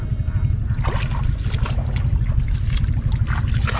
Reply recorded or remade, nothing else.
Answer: recorded